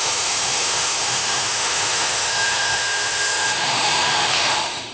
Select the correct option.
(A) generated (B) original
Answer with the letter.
A